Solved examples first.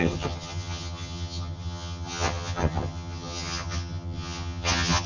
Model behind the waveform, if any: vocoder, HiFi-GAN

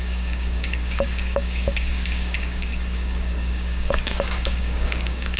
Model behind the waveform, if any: codec, DAC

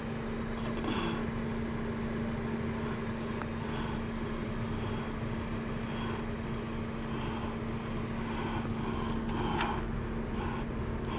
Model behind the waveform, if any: none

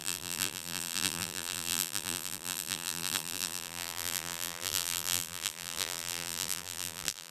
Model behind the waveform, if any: vocoder, BigVGAN v2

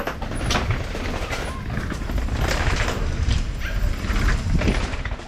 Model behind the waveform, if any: none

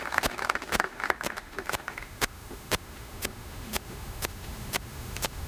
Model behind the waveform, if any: autoencoder, DAC-VAE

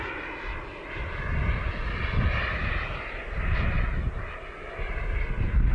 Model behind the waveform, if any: none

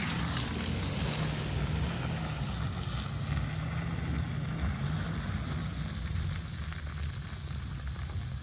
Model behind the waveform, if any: none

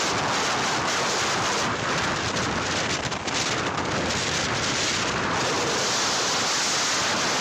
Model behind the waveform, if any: none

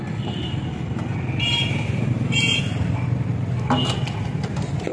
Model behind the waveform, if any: none